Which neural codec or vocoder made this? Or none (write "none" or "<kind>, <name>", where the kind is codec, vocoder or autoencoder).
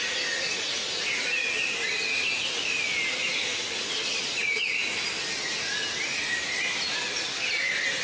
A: none